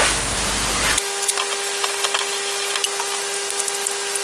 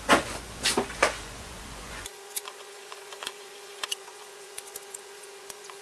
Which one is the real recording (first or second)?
first